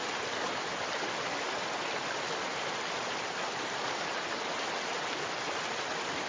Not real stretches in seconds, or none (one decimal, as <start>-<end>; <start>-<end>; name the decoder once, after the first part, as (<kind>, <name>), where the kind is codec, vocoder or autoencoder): none